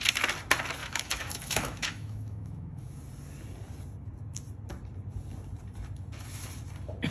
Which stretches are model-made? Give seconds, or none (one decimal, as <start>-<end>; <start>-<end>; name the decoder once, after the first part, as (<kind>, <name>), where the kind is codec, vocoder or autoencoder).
0.8-3.0 (autoencoder, DAC-VAE)